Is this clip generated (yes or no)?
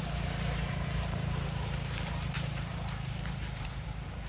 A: yes